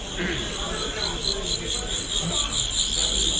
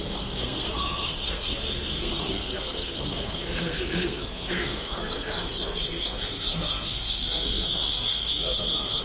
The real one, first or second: first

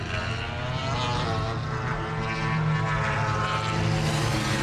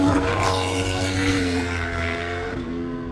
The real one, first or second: first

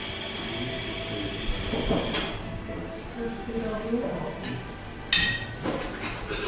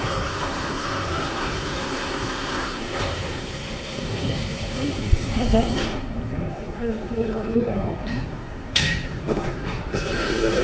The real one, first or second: first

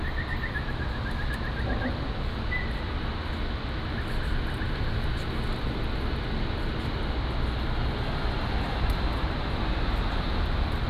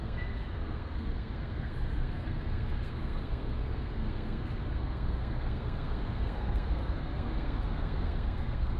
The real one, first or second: first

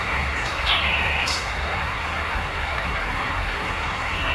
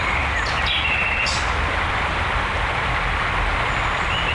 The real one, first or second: second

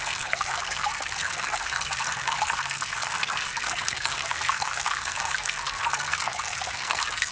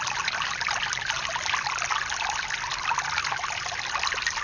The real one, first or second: second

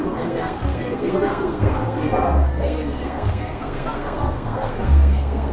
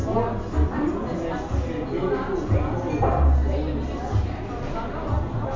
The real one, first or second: second